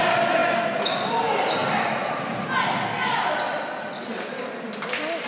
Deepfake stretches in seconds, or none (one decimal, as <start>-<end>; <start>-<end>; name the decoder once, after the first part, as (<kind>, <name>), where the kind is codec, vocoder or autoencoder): none